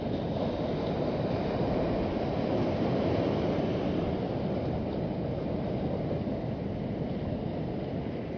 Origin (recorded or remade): recorded